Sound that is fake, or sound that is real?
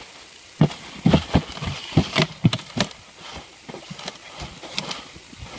real